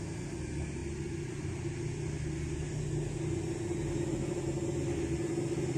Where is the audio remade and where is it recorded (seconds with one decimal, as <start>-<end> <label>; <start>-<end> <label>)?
0.0-5.8 recorded